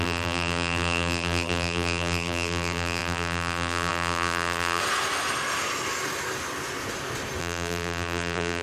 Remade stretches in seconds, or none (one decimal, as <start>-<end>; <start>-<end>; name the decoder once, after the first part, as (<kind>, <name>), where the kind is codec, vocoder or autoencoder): 0.0-4.8 (vocoder, BigVGAN v2); 7.4-8.6